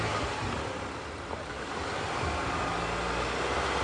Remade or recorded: recorded